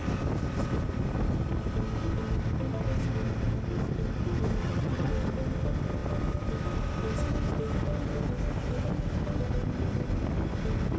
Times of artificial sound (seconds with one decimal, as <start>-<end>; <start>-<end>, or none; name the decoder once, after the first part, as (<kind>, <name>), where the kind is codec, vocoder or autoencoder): 4.6-5.1 (vocoder, HiFi-GAN)